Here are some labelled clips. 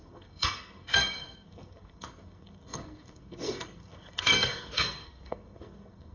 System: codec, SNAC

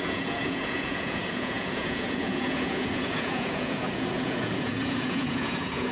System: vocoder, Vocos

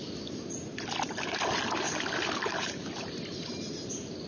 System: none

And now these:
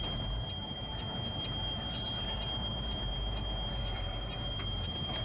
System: vocoder, BigVGAN v2